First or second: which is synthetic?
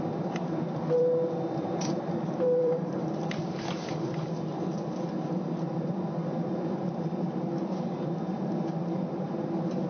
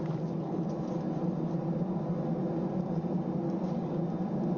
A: first